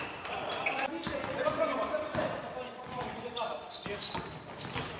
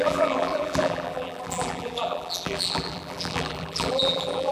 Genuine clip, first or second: first